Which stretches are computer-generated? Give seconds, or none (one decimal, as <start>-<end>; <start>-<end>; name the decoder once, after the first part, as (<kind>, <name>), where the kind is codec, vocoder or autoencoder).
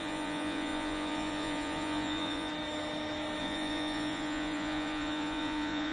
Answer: 0.0-2.5 (vocoder, Vocos); 3.4-5.9